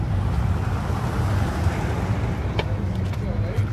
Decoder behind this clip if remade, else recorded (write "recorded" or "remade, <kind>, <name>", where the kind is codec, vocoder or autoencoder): recorded